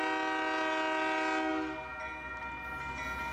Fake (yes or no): no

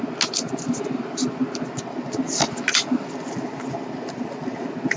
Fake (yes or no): no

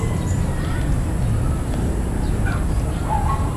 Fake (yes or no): no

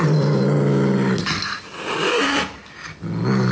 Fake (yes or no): no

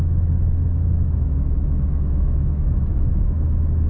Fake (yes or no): yes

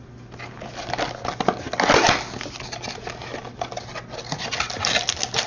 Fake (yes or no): no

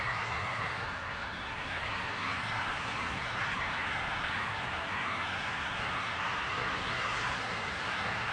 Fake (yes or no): yes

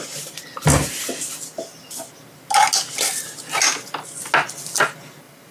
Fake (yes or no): no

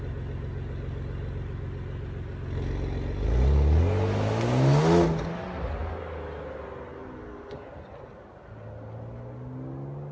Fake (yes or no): no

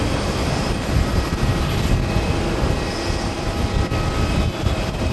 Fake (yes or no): no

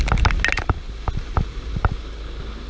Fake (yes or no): no